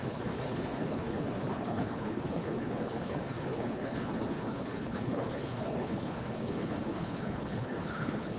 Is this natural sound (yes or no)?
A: no